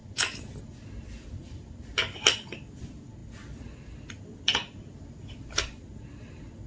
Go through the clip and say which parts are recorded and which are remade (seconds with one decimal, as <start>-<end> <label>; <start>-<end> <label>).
0.0-6.7 recorded